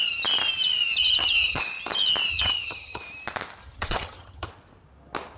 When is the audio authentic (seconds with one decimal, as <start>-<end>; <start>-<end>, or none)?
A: 0.0-1.0; 1.6-2.3; 3.0-3.6; 4.5-5.4